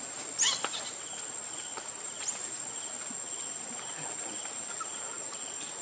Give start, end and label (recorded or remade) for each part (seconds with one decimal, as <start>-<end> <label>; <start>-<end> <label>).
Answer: 0.0-5.8 recorded